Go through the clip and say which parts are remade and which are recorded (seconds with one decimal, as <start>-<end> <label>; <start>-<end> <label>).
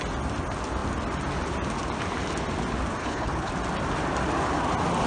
0.0-3.0 recorded; 3.0-3.5 remade; 3.5-5.1 recorded